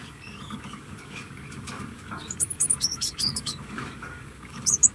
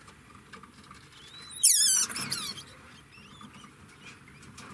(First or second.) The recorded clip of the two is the second